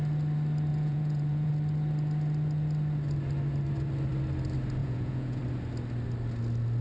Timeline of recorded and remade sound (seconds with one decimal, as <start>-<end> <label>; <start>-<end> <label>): 0.0-0.7 recorded; 0.7-1.5 remade; 1.5-4.8 recorded; 4.8-5.4 remade; 5.4-6.8 recorded